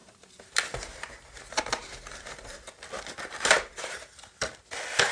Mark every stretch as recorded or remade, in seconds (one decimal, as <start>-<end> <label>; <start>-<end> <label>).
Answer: 0.0-2.5 remade; 2.5-3.1 recorded; 3.1-4.1 remade; 4.1-5.1 recorded